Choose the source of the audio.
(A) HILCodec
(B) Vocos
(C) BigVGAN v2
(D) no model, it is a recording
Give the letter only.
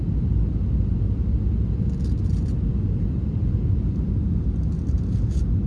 D